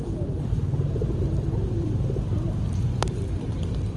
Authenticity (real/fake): real